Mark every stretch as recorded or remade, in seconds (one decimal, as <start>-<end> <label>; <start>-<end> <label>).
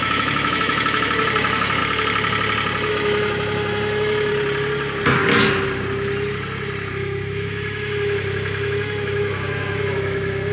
0.0-1.8 remade; 1.8-2.9 recorded; 2.9-4.3 remade; 4.3-6.9 recorded; 6.9-10.5 remade